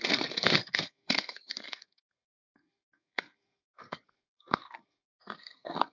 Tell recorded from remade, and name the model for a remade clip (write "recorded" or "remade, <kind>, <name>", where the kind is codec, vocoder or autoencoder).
remade, codec, SNAC